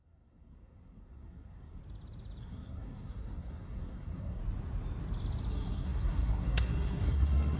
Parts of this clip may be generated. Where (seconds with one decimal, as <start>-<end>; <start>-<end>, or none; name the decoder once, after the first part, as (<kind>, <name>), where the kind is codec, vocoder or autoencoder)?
0.0-1.8 (codec, SNAC); 2.4-4.4; 5.5-7.6